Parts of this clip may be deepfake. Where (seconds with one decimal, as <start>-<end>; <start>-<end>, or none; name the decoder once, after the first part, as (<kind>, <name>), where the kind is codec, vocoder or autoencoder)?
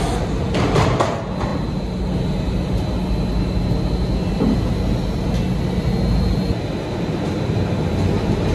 none